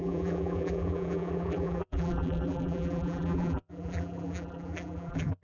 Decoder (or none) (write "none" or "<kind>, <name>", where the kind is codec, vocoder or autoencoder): vocoder, BigVGAN v2